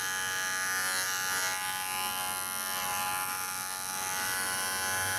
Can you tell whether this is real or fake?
real